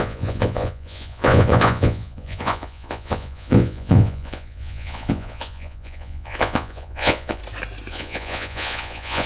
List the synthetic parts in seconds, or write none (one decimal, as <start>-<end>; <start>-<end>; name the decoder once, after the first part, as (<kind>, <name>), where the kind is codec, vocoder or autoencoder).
0.0-7.4 (vocoder, Vocos); 7.9-9.3